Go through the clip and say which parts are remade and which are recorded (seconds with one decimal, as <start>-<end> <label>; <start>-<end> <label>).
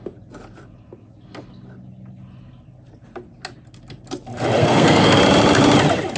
0.0-4.6 recorded; 4.6-5.2 remade; 5.2-6.2 recorded